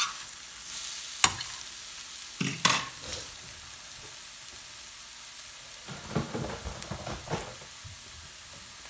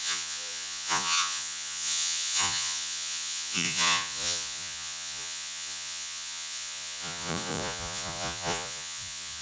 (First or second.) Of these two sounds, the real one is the first